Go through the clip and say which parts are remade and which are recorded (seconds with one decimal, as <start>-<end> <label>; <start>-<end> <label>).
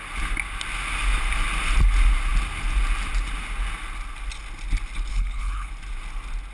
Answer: 0.0-5.1 recorded; 5.1-5.7 remade; 5.7-6.5 recorded